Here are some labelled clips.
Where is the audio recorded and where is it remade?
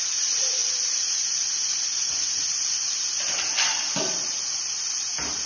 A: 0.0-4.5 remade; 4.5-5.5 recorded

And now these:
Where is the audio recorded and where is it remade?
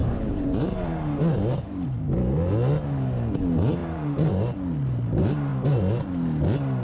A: 0.0-0.9 remade; 0.9-3.8 recorded; 3.8-4.3 remade; 4.3-6.8 recorded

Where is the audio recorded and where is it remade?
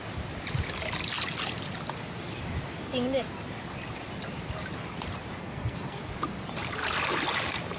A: 0.0-5.4 recorded; 5.4-6.0 remade; 6.0-7.8 recorded